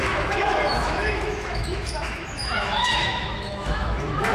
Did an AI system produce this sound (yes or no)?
yes